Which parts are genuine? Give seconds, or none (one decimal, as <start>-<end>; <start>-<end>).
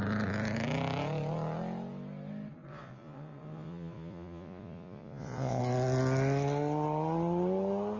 0.0-2.7; 5.6-8.0